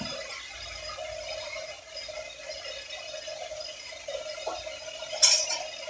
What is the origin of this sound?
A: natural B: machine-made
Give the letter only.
A